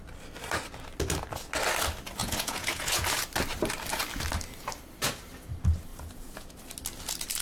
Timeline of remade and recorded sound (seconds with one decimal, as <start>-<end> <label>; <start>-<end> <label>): 0.0-2.2 recorded; 2.2-3.3 remade; 3.3-5.9 recorded; 5.9-6.6 remade; 6.6-7.4 recorded